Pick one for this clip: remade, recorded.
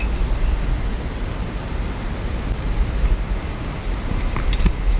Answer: recorded